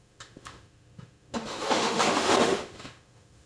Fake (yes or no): yes